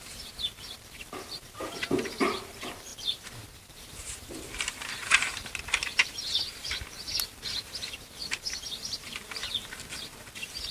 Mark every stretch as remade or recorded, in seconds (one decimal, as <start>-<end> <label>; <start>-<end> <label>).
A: 0.0-10.7 remade